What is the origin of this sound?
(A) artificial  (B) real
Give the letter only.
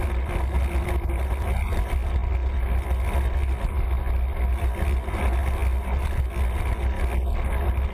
B